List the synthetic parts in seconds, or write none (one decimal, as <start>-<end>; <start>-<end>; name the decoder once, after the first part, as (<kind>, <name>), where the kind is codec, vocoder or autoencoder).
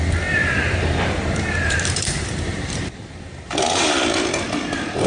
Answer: 0.4-3.5 (vocoder, BigVGAN v2)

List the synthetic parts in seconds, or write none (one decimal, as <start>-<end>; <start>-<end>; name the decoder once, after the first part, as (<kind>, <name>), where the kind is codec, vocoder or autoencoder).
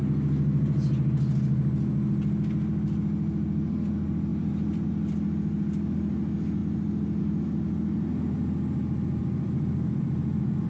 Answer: 4.3-4.8 (vocoder, BigVGAN v2); 6.6-7.2; 9.2-10.7